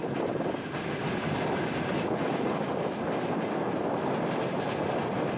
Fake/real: real